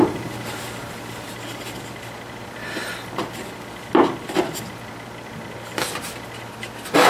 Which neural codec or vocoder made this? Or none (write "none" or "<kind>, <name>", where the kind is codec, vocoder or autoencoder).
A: none